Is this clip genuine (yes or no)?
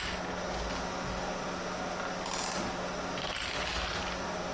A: yes